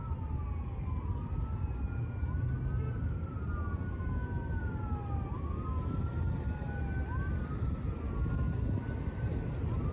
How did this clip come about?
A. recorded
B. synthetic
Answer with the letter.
A